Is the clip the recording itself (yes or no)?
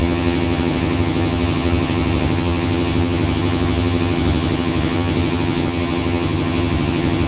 no